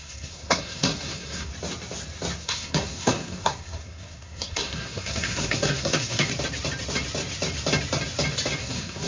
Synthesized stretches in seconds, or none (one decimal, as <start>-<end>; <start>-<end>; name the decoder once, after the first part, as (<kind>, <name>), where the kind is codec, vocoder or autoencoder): 0.0-1.5 (codec, SNAC); 2.4-6.3; 8.6-9.1